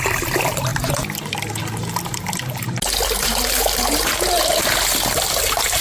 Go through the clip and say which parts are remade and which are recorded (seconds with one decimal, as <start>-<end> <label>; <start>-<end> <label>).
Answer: 0.0-5.8 recorded